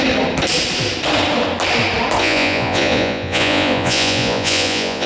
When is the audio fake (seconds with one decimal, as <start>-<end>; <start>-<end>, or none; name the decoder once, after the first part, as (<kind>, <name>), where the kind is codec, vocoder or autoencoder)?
2.2-5.1 (vocoder, Vocos)